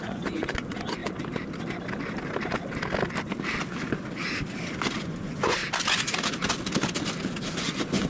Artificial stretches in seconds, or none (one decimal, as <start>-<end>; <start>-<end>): 0.0-1.0; 5.0-5.6; 7.6-8.1